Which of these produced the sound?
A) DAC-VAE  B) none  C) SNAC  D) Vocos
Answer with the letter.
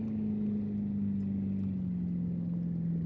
B